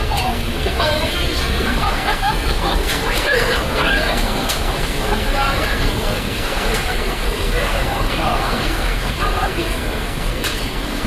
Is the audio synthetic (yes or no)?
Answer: yes